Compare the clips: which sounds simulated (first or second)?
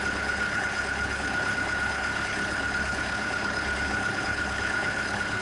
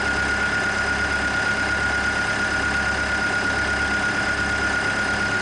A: first